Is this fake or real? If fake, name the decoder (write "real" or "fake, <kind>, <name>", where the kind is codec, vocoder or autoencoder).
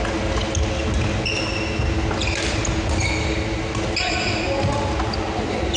real